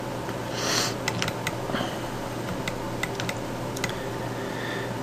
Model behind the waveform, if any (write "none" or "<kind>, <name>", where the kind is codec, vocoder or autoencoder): none